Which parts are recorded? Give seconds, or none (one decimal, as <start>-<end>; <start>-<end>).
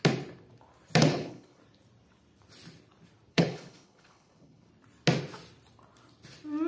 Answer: 0.0-1.1; 1.6-3.3; 4.7-6.7